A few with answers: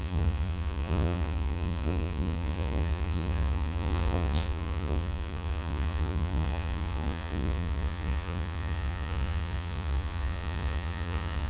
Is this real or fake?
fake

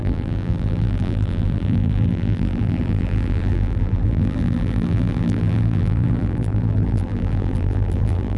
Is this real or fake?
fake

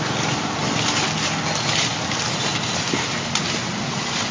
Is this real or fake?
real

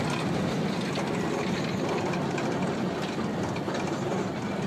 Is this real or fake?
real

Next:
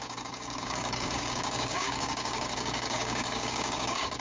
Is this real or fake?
fake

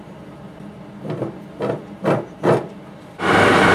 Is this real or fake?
real